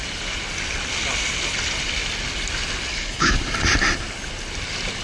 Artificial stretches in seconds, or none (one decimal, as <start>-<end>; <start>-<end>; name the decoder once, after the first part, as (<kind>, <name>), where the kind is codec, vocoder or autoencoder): 2.9-3.4 (codec, HILCodec)